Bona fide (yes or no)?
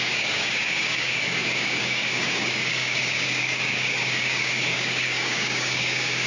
no